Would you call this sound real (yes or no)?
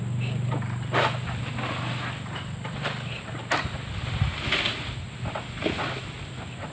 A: yes